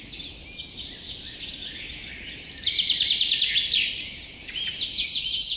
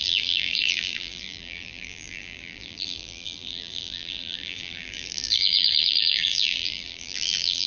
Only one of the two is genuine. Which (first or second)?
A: first